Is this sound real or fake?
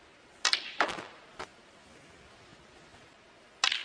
real